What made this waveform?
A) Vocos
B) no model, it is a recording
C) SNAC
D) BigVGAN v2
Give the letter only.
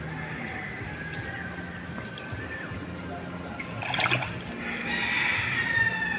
B